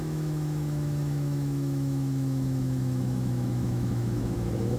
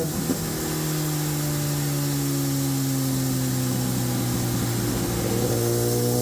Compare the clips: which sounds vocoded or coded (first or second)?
first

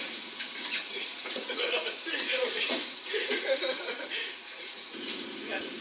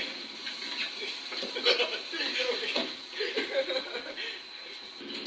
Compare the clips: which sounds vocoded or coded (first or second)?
first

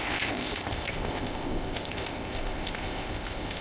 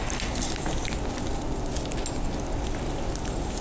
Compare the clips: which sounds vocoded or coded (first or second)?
first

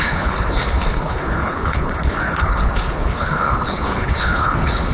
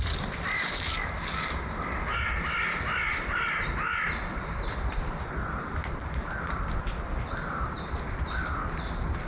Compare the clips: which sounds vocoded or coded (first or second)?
first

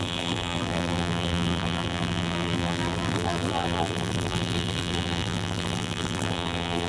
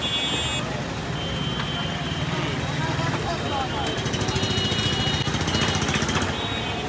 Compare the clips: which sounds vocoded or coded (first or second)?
first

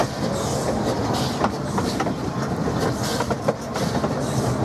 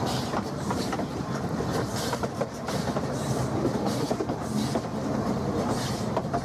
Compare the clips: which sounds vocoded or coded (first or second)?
second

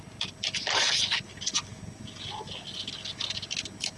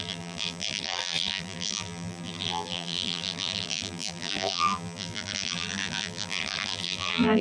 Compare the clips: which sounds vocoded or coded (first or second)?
second